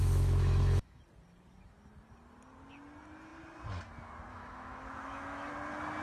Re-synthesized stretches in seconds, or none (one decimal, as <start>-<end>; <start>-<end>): 0.0-1.0; 4.3-5.5